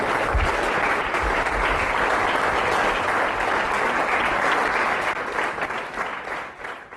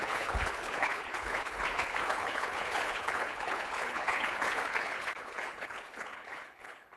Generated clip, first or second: second